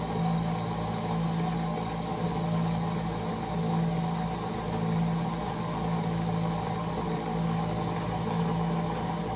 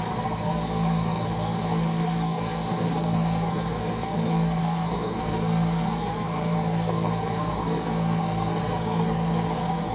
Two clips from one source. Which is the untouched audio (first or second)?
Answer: first